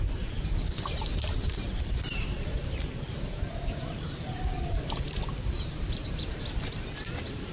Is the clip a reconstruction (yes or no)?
yes